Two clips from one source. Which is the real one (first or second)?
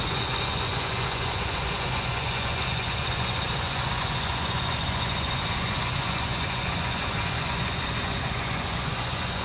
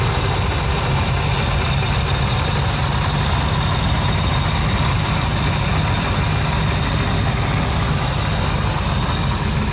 second